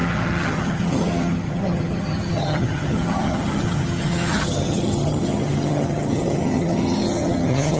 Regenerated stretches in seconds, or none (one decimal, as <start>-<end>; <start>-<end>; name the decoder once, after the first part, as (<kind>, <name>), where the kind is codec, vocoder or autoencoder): 0.0-7.8 (vocoder, HiFi-GAN)